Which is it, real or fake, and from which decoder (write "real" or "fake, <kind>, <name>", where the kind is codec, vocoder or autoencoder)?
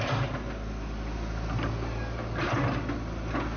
real